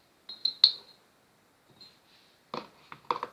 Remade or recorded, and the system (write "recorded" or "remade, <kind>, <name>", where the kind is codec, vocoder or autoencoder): recorded